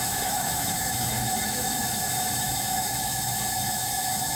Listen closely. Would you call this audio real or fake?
fake